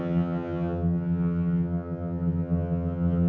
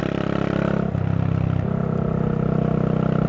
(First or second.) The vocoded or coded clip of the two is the first